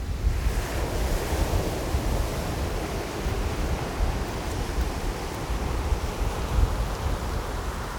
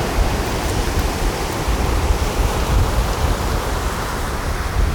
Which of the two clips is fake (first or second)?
second